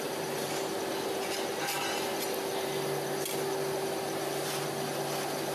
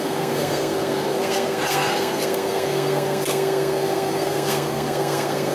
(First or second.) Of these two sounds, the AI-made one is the second